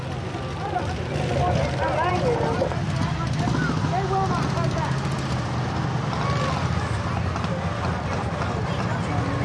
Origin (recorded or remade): recorded